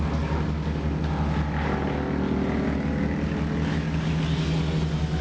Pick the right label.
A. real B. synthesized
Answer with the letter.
A